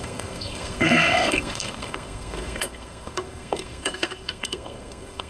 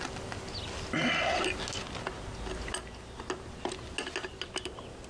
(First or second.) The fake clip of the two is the first